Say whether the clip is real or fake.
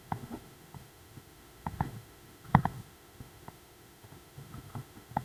fake